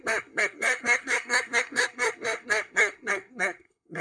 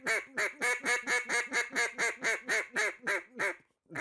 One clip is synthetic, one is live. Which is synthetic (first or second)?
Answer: first